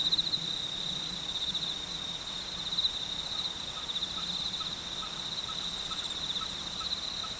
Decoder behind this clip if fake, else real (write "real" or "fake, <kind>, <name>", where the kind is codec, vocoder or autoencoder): real